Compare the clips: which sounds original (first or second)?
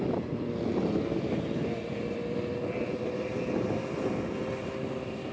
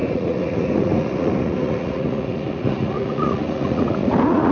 first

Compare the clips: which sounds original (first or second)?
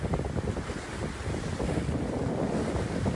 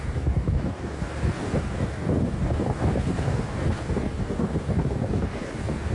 first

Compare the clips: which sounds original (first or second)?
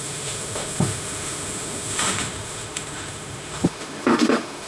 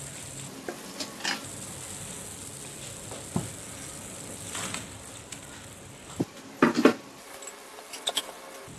second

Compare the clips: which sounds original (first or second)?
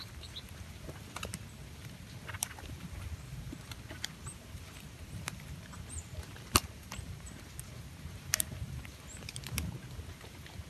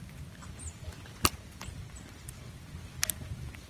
second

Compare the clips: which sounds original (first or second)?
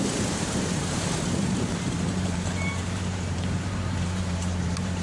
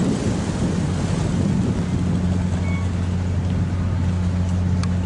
second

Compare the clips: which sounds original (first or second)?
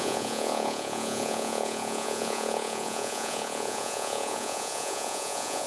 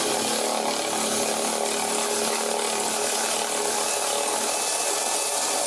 second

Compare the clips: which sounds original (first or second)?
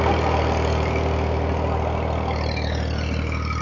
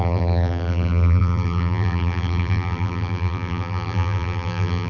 first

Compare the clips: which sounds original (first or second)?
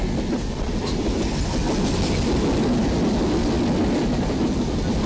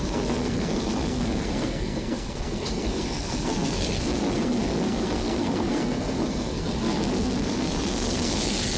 first